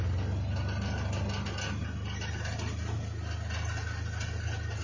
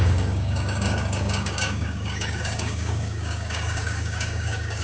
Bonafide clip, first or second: first